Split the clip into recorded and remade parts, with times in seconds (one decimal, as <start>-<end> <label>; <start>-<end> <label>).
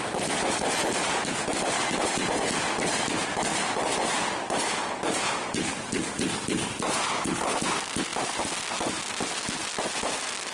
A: 0.0-10.5 recorded